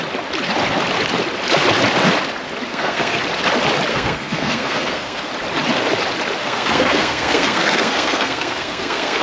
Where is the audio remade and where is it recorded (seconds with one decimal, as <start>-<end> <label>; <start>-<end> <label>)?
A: 0.0-2.7 recorded; 2.7-3.2 remade; 3.2-3.9 recorded; 3.9-5.3 remade; 5.3-6.4 recorded; 6.4-9.2 remade